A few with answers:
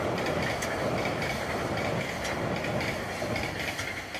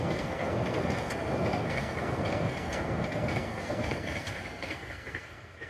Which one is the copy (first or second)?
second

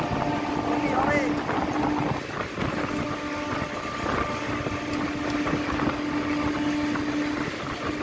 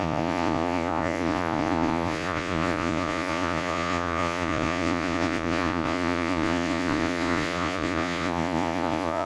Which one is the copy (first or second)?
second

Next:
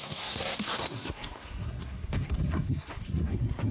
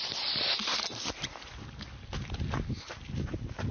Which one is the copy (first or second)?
first